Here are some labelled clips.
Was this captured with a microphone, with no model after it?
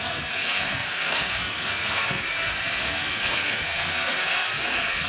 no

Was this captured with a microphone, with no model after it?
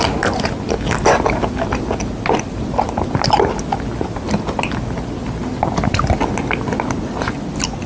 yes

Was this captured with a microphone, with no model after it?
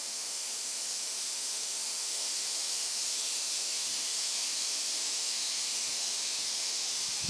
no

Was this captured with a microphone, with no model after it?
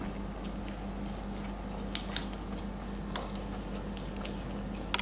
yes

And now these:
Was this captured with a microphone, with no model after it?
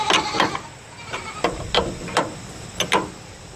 yes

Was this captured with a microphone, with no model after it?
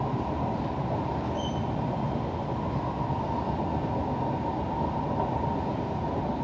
yes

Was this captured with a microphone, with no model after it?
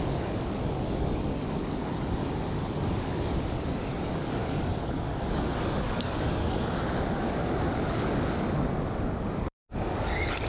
no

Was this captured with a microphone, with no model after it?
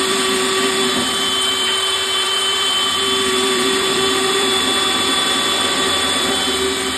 no